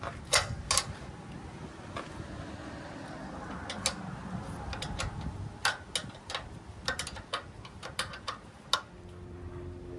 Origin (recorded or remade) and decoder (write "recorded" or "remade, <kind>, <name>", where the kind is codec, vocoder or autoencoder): recorded